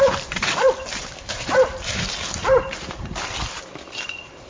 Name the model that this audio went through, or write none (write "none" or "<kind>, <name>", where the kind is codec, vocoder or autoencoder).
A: vocoder, BigVGAN v2